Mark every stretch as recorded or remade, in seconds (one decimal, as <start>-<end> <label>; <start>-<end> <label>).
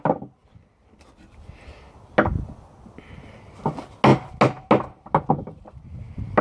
0.0-6.4 recorded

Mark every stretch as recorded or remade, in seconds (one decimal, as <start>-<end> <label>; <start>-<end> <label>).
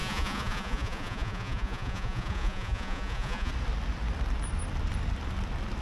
0.0-3.5 remade; 3.5-5.8 recorded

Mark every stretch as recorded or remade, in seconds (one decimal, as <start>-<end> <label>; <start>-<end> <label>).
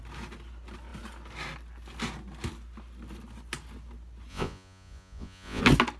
0.0-4.3 recorded; 4.3-5.6 remade; 5.6-6.0 recorded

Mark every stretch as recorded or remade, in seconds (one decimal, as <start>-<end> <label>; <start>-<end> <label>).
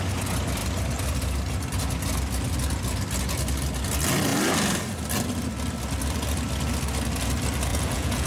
0.0-7.7 recorded; 7.7-8.3 remade